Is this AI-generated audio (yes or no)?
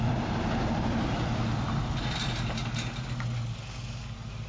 no